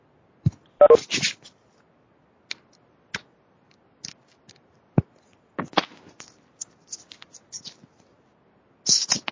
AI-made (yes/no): no